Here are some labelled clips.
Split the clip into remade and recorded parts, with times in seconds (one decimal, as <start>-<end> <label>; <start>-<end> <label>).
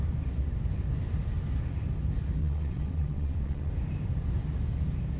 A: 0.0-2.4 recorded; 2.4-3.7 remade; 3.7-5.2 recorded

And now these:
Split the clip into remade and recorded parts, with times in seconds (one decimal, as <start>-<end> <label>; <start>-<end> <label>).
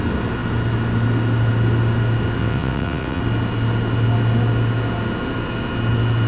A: 0.0-2.4 recorded; 2.4-3.2 remade; 3.2-6.3 recorded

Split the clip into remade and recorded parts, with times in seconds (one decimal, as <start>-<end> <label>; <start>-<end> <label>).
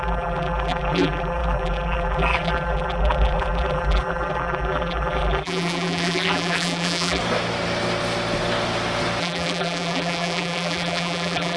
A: 0.0-7.2 remade; 7.2-9.2 recorded; 9.2-11.6 remade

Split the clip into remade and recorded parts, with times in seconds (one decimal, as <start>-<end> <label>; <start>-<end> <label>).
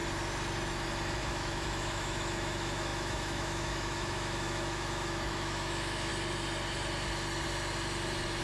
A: 0.0-1.2 recorded; 1.2-6.1 remade; 6.1-8.4 recorded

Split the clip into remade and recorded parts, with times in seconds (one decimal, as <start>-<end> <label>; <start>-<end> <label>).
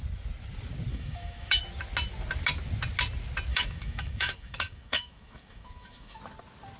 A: 0.0-0.9 recorded; 0.9-1.6 remade; 1.6-3.5 recorded; 3.5-6.2 remade; 6.2-6.8 recorded